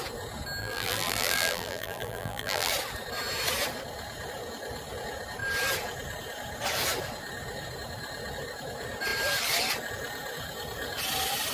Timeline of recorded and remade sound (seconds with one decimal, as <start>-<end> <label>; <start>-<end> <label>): 0.0-0.6 recorded; 0.6-2.7 remade; 2.7-11.5 recorded

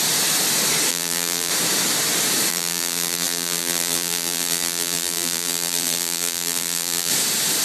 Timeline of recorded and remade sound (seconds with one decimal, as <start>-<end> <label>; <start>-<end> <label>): 0.0-0.9 recorded; 0.9-1.5 remade; 1.5-2.5 recorded; 2.5-7.1 remade; 7.1-7.6 recorded

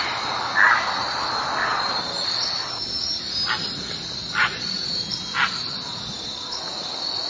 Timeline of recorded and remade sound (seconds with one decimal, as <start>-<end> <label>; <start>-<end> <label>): 0.0-7.3 recorded